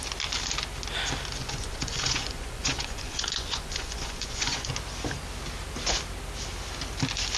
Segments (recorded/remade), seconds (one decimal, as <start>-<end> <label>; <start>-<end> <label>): 0.0-1.4 recorded; 1.4-4.7 remade; 4.7-7.4 recorded